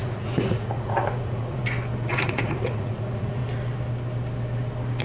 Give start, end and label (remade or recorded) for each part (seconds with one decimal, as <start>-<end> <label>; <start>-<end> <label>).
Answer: 0.0-1.6 remade; 1.6-2.1 recorded; 2.1-3.4 remade; 3.4-5.0 recorded